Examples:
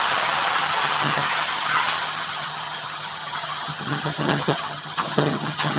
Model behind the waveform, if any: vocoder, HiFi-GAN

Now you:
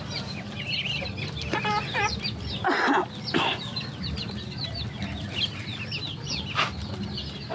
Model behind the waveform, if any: none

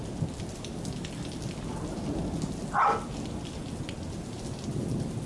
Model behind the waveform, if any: none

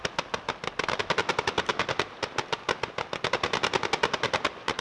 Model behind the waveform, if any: none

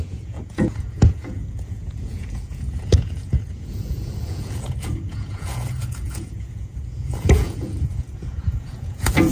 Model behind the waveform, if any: vocoder, Vocos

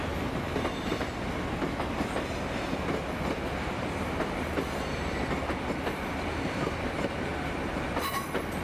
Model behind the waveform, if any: none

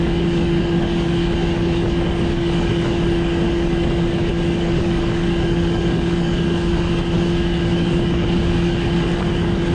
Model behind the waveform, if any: codec, DAC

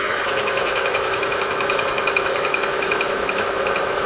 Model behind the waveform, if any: autoencoder, DAC-VAE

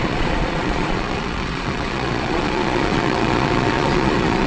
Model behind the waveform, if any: vocoder, Vocos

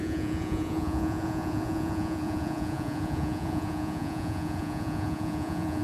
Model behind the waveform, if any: vocoder, Vocos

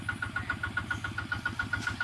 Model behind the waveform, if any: none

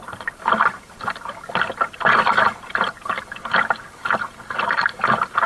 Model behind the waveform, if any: none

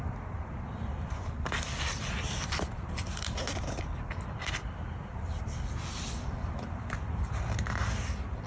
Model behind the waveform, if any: vocoder, BigVGAN v2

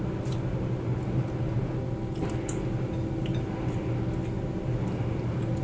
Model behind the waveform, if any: none